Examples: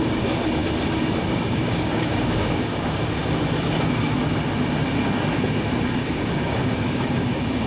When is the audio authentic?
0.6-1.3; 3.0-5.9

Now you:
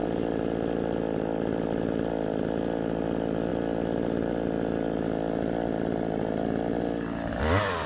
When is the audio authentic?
0.0-7.9

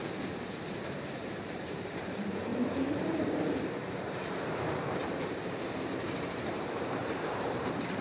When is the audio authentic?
none

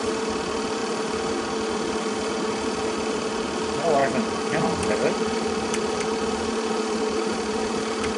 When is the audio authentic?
none

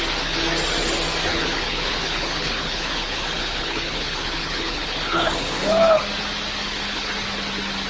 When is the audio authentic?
0.0-1.3; 6.0-6.6; 7.1-7.9

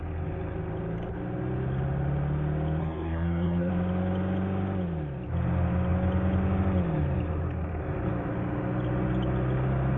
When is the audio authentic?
0.0-2.8; 3.7-10.0

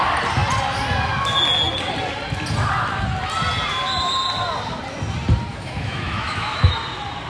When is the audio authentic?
0.0-5.5; 6.7-7.3